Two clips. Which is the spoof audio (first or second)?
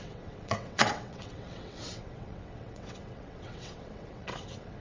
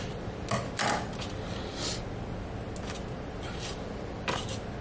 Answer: first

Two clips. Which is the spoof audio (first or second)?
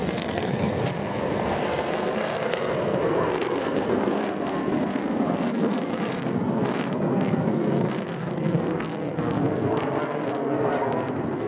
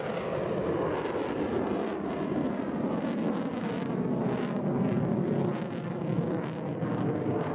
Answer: first